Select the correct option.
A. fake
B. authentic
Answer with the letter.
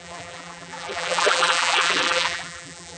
A